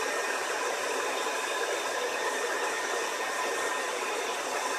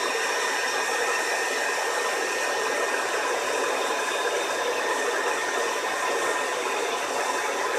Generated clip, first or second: first